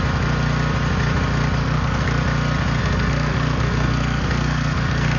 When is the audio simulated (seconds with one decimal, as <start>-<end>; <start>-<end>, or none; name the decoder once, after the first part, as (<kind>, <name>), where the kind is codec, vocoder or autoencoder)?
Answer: 1.6-2.2 (codec, SNAC); 2.8-5.2